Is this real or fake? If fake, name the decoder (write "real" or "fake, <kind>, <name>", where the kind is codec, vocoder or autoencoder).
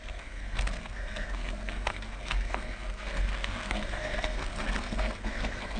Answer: fake, codec, SNAC